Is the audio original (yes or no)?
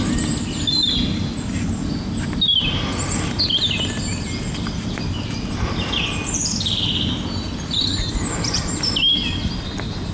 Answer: yes